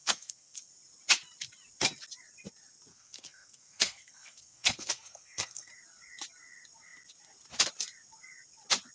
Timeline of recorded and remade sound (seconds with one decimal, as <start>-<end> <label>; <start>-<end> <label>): 0.0-0.7 remade; 0.7-2.9 recorded; 2.9-5.7 remade; 5.7-8.9 recorded